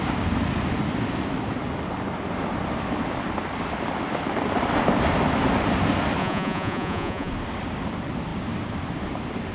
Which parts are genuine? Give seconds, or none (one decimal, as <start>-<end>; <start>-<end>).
0.0-6.2; 7.3-9.5